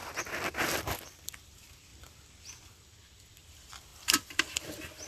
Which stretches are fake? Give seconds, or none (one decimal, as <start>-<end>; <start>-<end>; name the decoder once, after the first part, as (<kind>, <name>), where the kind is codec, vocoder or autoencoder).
0.6-1.9 (vocoder, BigVGAN v2); 2.5-5.1